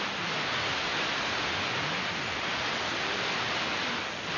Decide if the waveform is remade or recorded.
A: recorded